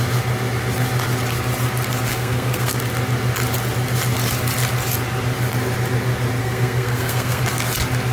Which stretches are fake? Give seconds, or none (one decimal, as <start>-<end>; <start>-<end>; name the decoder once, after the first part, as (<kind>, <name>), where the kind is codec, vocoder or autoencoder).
2.1-2.8 (codec, SNAC); 6.4-7.4